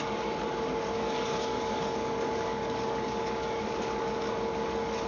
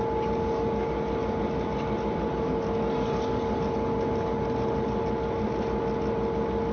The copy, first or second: first